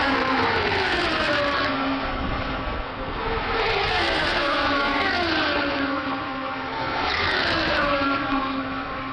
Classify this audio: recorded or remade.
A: remade